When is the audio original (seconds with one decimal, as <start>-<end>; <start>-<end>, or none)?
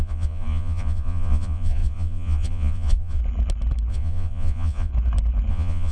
3.2-3.9; 4.9-5.5